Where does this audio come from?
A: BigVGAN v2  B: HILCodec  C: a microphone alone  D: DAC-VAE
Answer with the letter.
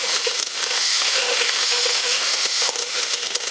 D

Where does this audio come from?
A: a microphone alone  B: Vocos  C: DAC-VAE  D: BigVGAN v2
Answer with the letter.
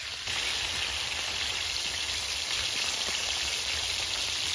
A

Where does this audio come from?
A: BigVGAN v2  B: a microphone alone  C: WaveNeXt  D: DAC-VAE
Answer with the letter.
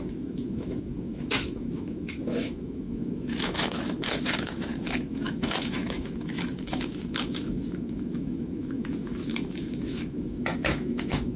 D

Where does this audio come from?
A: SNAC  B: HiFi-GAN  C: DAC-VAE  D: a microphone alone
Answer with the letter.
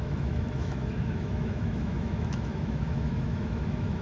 C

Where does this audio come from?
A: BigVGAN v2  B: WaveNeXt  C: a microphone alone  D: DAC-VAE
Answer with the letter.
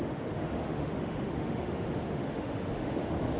D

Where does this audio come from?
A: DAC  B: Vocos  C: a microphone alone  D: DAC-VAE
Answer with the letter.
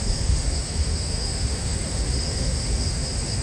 D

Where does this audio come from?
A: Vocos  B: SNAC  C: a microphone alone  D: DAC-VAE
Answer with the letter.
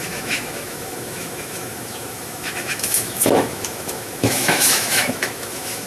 D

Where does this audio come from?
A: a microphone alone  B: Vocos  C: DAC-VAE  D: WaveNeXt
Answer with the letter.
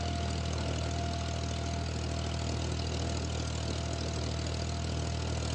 A